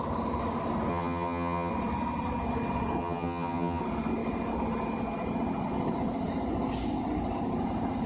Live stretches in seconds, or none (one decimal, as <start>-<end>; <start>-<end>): 0.0-0.9; 1.7-3.0; 3.8-8.1